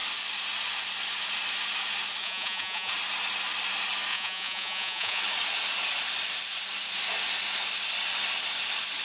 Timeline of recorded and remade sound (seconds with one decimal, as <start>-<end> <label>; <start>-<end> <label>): 0.0-2.2 recorded; 2.2-2.9 remade; 2.9-4.1 recorded; 4.1-5.2 remade; 5.2-9.0 recorded